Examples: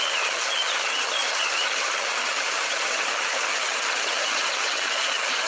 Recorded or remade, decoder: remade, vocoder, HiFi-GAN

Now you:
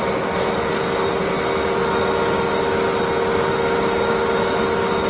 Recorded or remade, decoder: recorded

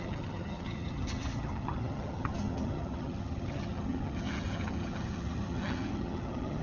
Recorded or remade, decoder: remade, vocoder, HiFi-GAN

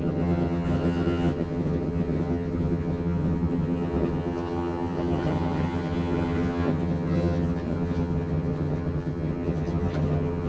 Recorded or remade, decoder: remade, vocoder, HiFi-GAN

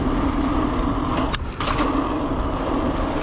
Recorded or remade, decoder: recorded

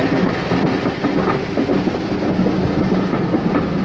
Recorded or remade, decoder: recorded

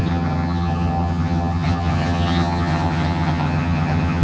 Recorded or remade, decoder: remade, vocoder, HiFi-GAN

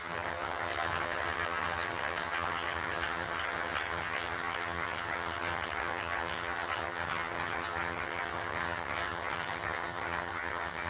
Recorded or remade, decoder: remade, vocoder, HiFi-GAN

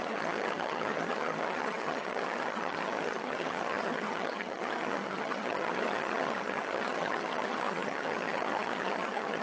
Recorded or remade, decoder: remade, vocoder, HiFi-GAN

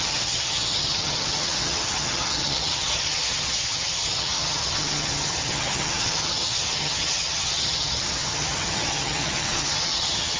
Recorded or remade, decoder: remade, vocoder, HiFi-GAN